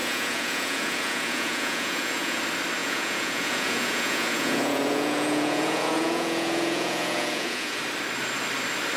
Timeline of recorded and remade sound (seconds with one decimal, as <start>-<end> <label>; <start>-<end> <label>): 0.0-2.4 remade; 2.4-2.8 recorded; 2.8-7.8 remade; 7.8-9.0 recorded